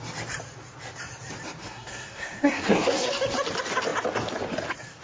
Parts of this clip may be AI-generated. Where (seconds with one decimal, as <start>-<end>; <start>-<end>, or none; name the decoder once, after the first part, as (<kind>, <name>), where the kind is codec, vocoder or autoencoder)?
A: 1.6-3.1 (codec, SNAC)